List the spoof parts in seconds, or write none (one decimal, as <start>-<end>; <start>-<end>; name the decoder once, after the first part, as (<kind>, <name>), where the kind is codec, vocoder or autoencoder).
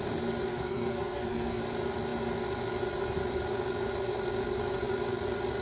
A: 0.5-1.6 (codec, SNAC)